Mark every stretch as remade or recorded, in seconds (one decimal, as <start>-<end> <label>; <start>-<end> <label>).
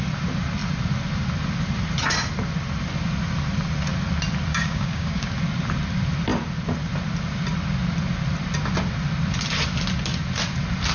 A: 0.0-4.5 recorded; 4.5-5.3 remade; 5.3-10.9 recorded